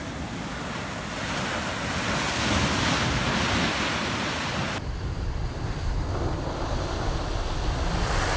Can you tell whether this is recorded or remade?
recorded